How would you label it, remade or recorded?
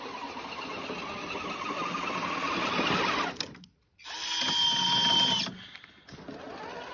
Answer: recorded